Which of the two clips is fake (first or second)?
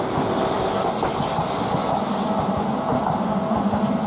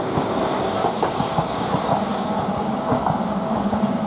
second